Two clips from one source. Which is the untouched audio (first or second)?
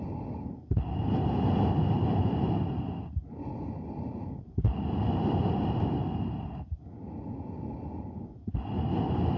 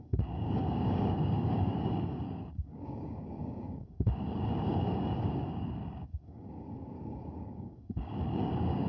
first